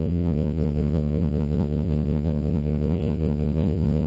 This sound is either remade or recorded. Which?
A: remade